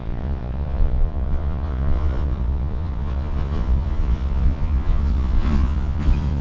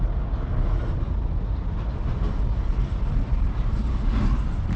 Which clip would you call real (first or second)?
second